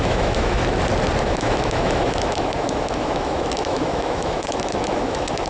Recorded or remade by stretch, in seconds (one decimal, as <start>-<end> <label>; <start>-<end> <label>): 0.0-0.6 remade; 0.6-1.2 recorded; 1.2-5.5 remade